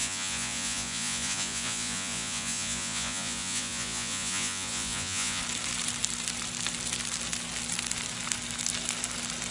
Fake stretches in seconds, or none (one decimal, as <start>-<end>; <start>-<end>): 0.0-5.4